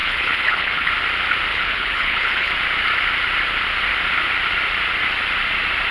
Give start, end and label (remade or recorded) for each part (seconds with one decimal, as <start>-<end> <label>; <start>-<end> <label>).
0.0-0.9 remade; 0.9-1.5 recorded; 1.5-2.5 remade; 2.5-5.9 recorded